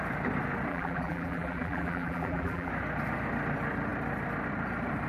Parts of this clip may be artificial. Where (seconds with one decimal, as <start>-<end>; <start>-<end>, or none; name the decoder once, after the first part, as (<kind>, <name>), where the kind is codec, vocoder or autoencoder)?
0.7-2.7 (vocoder, BigVGAN v2)